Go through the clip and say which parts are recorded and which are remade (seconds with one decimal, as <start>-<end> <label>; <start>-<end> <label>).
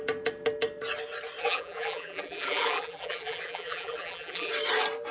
0.0-1.4 recorded; 1.4-4.5 remade; 4.5-5.1 recorded